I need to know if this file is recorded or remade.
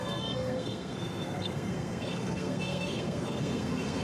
remade